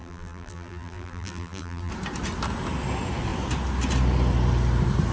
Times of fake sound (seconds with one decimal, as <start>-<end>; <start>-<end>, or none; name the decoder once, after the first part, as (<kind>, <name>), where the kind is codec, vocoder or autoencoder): 0.0-1.9 (vocoder, BigVGAN v2)